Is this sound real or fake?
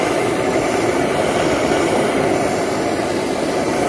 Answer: real